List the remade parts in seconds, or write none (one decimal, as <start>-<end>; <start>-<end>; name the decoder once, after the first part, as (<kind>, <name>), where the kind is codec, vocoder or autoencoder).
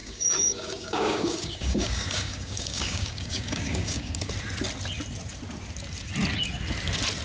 0.0-4.3 (codec, DAC)